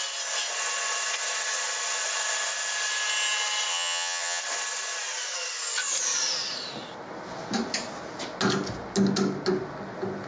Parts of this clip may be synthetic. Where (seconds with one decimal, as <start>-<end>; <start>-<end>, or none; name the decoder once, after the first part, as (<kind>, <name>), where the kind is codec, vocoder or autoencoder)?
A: 3.7-4.4 (vocoder, HiFi-GAN)